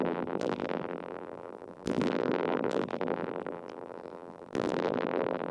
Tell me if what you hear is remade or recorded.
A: remade